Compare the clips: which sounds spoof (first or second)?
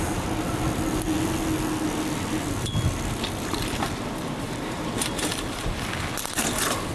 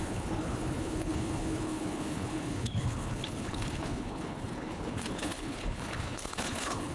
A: second